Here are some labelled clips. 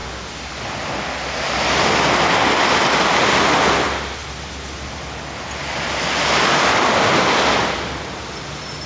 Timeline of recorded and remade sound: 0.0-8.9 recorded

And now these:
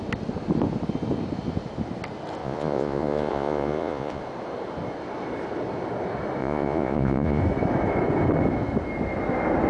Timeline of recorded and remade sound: 0.0-2.4 recorded; 2.4-4.2 remade; 4.2-6.4 recorded; 6.4-7.4 remade; 7.4-9.7 recorded

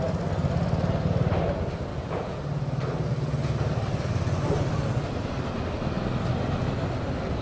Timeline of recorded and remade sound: 0.0-1.9 recorded; 1.9-2.4 remade; 2.4-7.4 recorded

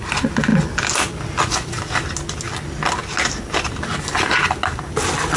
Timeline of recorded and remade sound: 0.0-5.4 recorded

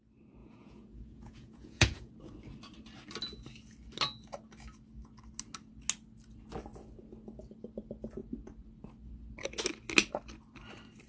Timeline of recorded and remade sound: 0.0-0.4 recorded; 0.4-2.1 remade; 2.1-11.1 recorded

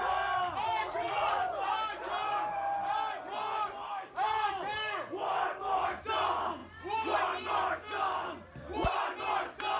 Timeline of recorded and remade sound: 0.0-0.8 recorded; 0.8-1.5 remade; 1.5-9.8 recorded

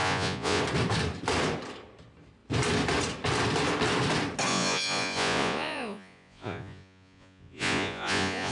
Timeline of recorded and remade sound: 0.0-0.6 remade; 0.6-4.5 recorded; 4.5-8.5 remade